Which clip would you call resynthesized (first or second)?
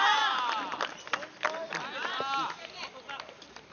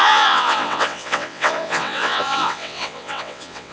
second